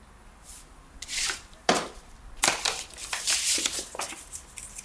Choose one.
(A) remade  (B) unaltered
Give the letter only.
A